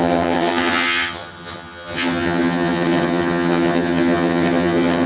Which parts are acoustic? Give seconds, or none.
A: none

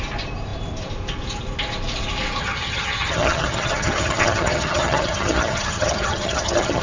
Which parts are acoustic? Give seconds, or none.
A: 0.0-2.4